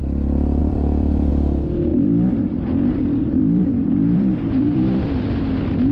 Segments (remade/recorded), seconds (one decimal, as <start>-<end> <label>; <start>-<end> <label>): 0.0-0.6 recorded; 0.6-1.3 remade; 1.3-1.9 recorded; 1.9-5.4 remade; 5.4-5.9 recorded